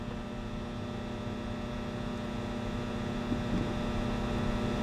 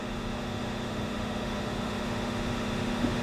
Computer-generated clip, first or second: second